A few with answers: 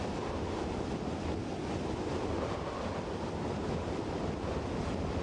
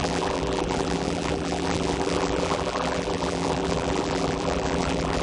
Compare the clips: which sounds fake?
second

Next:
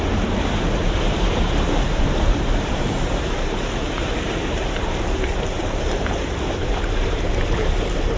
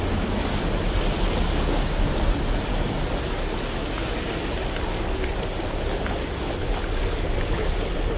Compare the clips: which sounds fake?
first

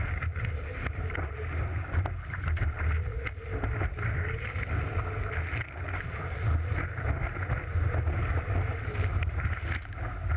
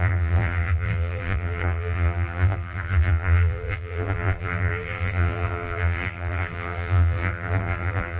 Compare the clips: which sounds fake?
second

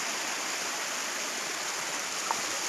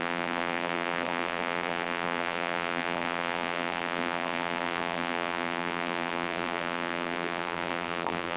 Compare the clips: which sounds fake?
second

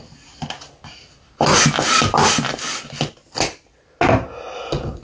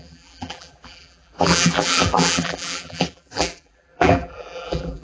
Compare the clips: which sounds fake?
second